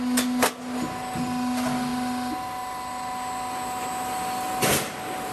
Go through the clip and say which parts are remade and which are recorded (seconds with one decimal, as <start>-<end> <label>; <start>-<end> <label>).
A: 0.0-5.3 recorded